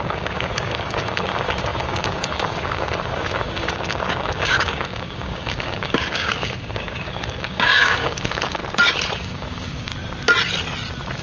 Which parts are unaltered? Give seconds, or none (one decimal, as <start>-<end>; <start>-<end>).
8.6-9.1; 9.9-11.2

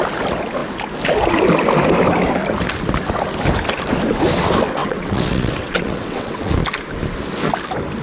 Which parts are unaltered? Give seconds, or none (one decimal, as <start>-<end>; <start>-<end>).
0.0-4.8; 6.5-8.0

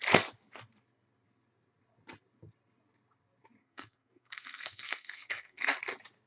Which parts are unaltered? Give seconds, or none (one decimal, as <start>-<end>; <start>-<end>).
0.0-3.6; 5.8-6.3

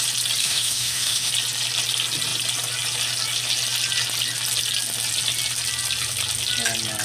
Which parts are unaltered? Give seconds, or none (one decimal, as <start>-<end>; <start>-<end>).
0.0-0.4; 1.3-7.0

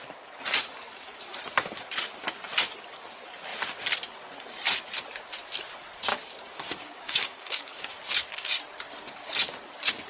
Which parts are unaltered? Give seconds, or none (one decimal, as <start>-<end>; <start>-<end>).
0.0-6.1; 7.8-10.1